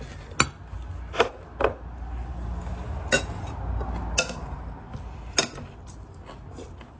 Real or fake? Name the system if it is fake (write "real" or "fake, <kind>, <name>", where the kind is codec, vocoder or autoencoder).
real